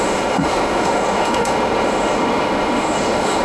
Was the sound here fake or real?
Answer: fake